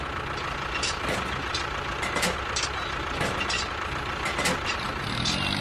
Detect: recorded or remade recorded